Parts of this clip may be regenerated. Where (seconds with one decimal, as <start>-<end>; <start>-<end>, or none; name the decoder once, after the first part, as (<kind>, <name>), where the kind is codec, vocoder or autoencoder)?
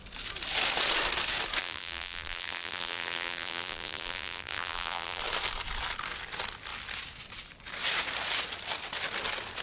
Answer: 1.6-5.2 (vocoder, BigVGAN v2)